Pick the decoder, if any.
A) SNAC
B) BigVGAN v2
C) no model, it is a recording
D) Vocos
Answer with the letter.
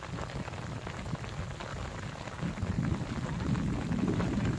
C